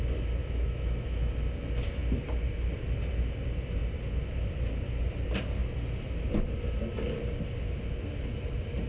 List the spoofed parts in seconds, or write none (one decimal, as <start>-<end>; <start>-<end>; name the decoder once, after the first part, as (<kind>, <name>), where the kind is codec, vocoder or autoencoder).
0.4-1.3 (autoencoder, DAC-VAE)